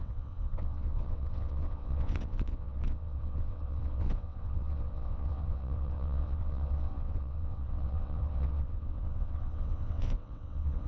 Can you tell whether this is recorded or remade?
remade